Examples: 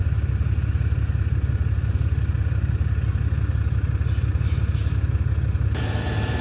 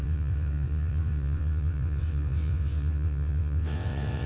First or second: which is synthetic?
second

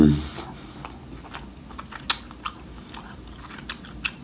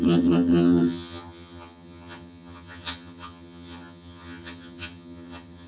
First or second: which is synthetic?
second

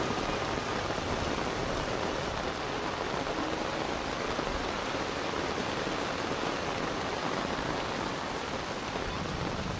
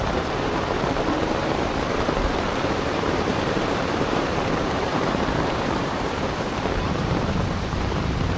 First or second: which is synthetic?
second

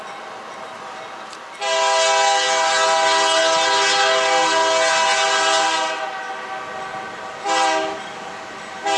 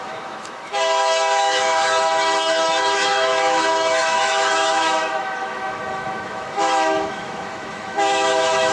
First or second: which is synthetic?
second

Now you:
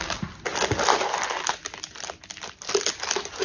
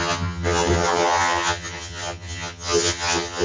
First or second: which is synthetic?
second